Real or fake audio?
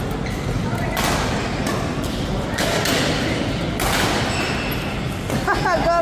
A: real